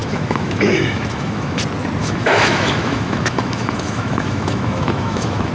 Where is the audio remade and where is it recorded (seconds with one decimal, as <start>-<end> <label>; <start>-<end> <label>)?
0.0-1.6 remade; 1.6-2.0 recorded; 2.0-5.5 remade